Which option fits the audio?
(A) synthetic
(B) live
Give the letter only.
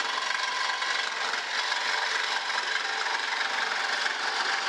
B